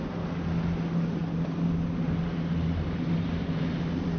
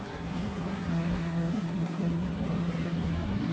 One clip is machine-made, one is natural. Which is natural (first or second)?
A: first